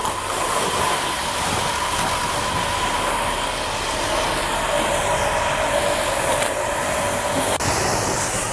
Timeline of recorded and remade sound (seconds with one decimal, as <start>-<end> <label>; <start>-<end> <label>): 0.0-8.5 recorded